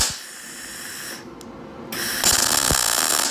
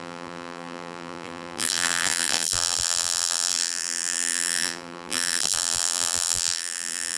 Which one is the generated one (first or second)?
second